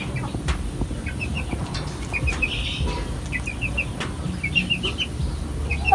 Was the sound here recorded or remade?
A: recorded